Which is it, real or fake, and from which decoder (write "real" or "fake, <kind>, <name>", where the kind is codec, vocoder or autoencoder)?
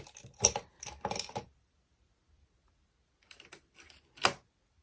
real